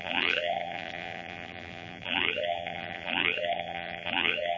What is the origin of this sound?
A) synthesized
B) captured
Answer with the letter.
A